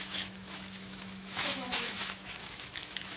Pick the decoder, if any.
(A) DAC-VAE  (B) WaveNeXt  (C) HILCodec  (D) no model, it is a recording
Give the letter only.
A